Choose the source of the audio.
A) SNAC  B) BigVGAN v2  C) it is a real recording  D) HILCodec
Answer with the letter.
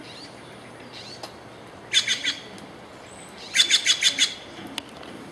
C